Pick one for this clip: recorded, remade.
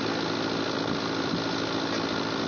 recorded